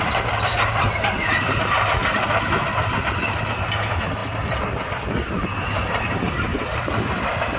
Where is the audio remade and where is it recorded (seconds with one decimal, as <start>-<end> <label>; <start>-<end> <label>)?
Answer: 0.0-2.0 remade; 2.0-2.7 recorded; 2.7-4.2 remade; 4.2-4.9 recorded; 4.9-7.6 remade